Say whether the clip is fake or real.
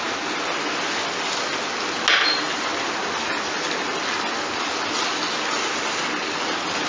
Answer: real